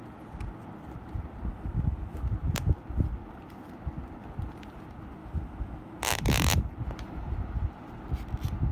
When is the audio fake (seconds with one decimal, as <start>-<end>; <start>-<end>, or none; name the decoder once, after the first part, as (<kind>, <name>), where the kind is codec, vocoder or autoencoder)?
1.5-2.3 (autoencoder, DAC-VAE); 5.2-6.0